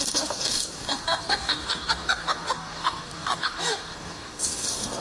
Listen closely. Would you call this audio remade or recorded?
remade